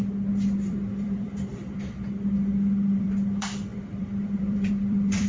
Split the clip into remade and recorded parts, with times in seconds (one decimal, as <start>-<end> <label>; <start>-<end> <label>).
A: 0.0-0.7 recorded; 0.7-1.5 remade; 1.5-3.0 recorded; 3.0-5.3 remade